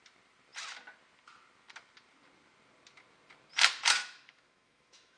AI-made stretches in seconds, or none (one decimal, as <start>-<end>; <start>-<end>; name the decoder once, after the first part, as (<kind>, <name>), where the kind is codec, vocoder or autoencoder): 4.0-5.2 (autoencoder, DAC-VAE)